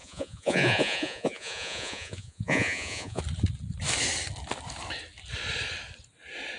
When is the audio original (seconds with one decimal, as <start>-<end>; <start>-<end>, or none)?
3.2-6.6